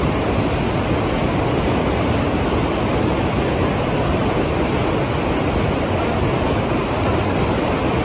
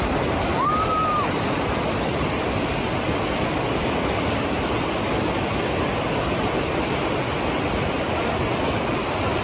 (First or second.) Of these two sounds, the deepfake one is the second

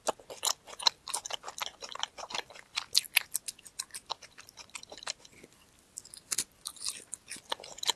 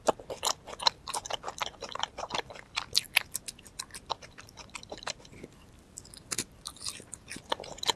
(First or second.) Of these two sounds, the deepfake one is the second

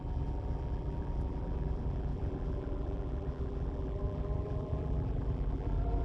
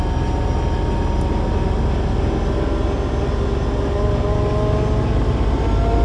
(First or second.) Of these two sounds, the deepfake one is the first